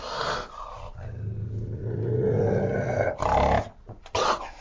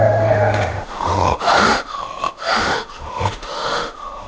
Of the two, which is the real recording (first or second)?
first